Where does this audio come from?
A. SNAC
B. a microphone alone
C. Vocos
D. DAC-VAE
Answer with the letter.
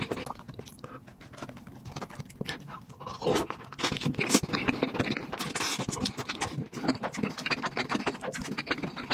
B